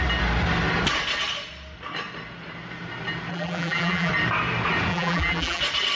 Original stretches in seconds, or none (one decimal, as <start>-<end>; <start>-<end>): 0.0-3.3; 4.1-4.9; 5.6-6.0